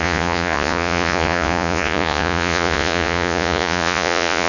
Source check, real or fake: fake